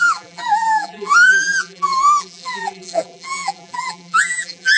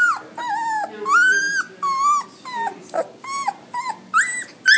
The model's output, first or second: first